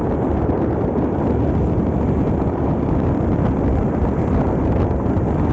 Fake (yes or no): no